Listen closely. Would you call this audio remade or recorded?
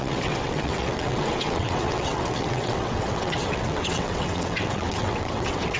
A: remade